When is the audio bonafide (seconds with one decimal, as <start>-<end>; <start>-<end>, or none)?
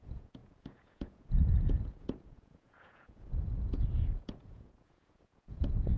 none